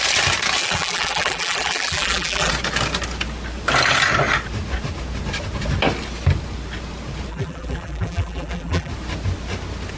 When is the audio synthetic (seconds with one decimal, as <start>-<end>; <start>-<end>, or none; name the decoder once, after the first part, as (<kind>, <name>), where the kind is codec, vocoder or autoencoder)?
0.6-2.5 (vocoder, BigVGAN v2); 7.3-8.9